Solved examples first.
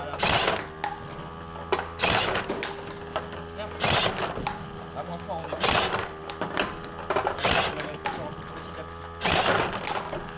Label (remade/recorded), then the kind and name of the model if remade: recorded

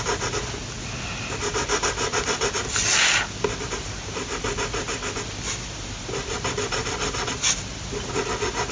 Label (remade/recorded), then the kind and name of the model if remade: recorded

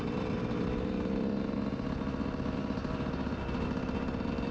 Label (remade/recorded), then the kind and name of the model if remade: recorded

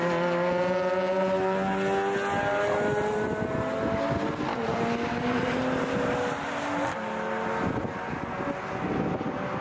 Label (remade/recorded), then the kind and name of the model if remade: recorded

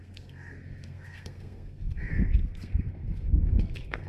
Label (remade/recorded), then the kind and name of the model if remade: remade, codec, SNAC